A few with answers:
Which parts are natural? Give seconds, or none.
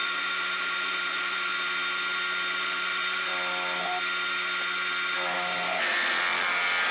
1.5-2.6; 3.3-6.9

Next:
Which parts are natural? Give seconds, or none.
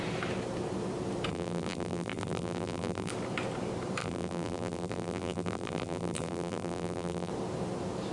0.0-1.3; 3.1-4.0; 7.3-8.1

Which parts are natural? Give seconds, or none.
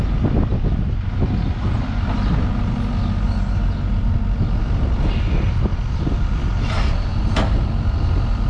0.0-5.7; 6.4-8.5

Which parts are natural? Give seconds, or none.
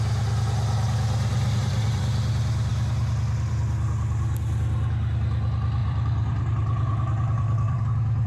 0.0-1.3; 2.0-5.8; 7.8-8.3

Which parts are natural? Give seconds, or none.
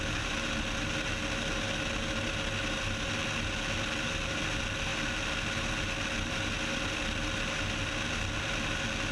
0.0-9.1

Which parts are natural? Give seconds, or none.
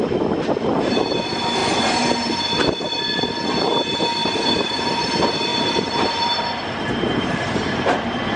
0.0-4.2; 5.1-5.5; 8.0-8.4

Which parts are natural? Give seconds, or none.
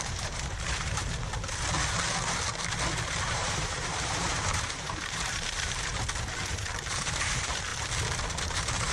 1.0-3.2; 5.9-6.5; 7.7-8.3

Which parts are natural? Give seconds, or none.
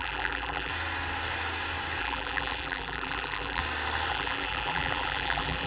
0.7-2.0; 3.6-4.1